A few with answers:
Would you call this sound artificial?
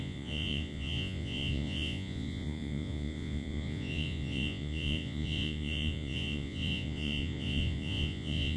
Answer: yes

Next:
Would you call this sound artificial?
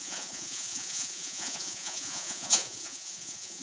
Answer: yes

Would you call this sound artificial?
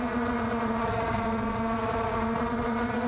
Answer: yes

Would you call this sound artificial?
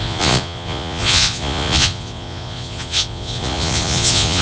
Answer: yes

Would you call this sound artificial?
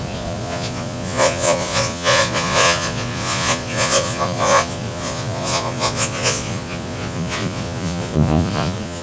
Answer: yes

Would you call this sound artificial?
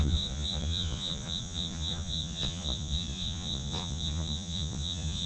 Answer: yes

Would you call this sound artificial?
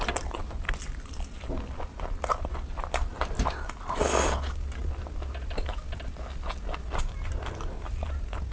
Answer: no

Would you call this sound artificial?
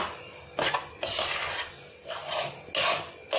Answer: no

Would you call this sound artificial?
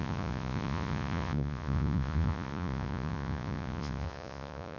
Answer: yes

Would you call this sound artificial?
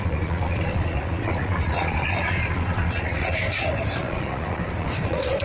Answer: yes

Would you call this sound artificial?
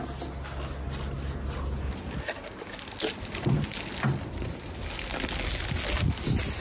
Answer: no